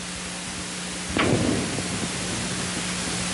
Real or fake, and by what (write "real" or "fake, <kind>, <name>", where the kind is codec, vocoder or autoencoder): real